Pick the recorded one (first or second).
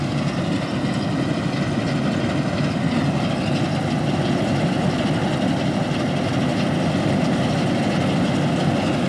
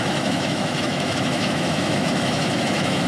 first